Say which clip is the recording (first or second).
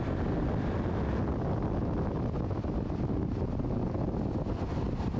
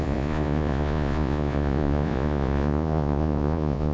first